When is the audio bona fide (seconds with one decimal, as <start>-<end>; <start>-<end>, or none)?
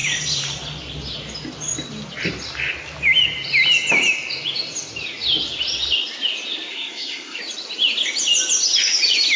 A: 0.0-6.7; 7.4-9.4